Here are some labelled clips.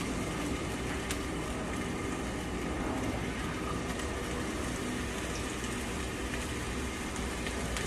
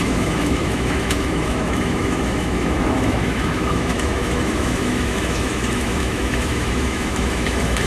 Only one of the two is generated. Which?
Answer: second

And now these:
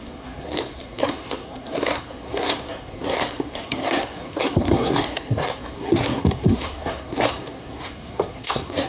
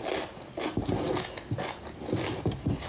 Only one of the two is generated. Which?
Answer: first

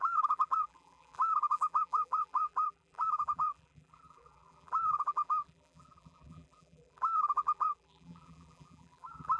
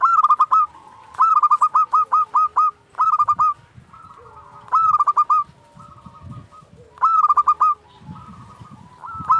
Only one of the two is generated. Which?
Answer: first